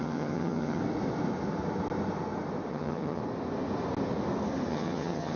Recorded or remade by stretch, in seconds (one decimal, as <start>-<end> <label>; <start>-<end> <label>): 0.0-0.8 remade; 0.8-2.7 recorded; 2.7-3.2 remade; 3.2-4.7 recorded; 4.7-5.4 remade

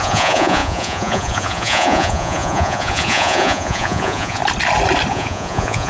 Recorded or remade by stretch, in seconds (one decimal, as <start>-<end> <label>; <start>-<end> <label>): 0.0-4.4 remade; 4.4-5.1 recorded; 5.1-5.9 remade

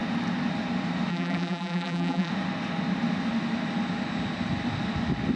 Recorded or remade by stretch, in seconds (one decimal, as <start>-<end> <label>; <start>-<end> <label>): 0.0-1.1 recorded; 1.1-2.3 remade; 2.3-5.4 recorded

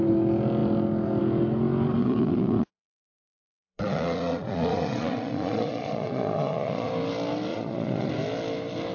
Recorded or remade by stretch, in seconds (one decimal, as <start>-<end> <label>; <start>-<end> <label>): 0.0-2.0 recorded; 2.0-6.9 remade; 6.9-7.5 recorded; 7.5-8.1 remade; 8.1-8.9 recorded

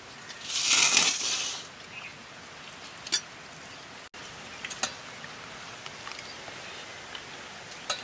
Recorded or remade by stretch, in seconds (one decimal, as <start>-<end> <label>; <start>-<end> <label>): 0.0-8.0 recorded